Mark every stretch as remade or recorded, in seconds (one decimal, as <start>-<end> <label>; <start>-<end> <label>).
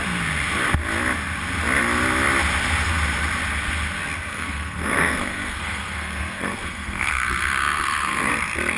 0.0-4.3 recorded; 4.3-8.3 remade; 8.3-8.8 recorded